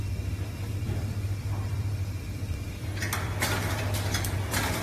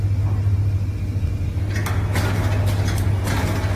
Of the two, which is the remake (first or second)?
first